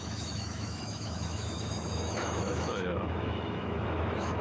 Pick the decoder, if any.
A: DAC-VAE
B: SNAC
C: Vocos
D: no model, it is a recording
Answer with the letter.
A